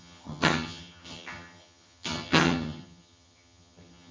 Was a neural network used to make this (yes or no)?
yes